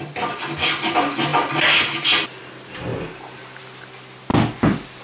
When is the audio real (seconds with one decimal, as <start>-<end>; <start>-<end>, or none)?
0.0-5.0

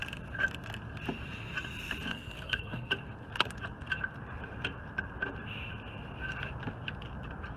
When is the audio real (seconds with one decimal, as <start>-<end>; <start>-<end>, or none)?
0.0-2.1; 2.9-7.6

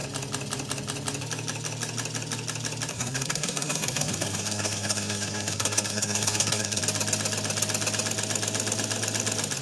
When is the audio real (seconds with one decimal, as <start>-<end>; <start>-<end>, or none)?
0.0-2.9; 6.8-9.6

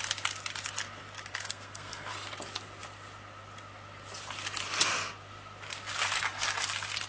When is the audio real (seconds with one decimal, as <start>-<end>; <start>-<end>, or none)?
0.0-1.3; 2.1-7.1

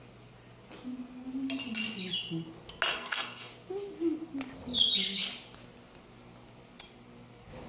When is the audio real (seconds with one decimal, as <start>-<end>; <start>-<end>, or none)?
0.0-2.9; 3.5-7.7

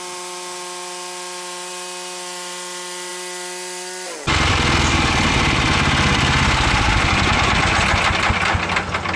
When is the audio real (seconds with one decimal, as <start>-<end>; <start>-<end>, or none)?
0.0-9.2